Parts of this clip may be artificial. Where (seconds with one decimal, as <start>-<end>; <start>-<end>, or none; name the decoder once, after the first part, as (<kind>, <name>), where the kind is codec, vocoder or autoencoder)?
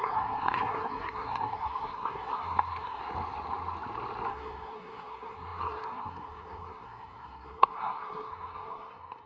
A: 0.0-3.0 (codec, SNAC); 4.3-9.3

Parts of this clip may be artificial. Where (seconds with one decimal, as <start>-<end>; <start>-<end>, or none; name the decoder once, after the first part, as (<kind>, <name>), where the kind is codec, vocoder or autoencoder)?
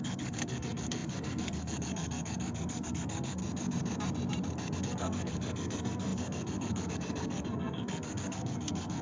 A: 0.0-3.4 (codec, SNAC); 4.8-9.0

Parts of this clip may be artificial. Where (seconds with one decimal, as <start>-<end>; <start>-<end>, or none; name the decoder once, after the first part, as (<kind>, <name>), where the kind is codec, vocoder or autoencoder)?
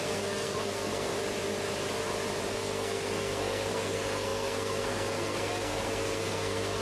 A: 0.0-1.1 (codec, SNAC); 2.5-6.8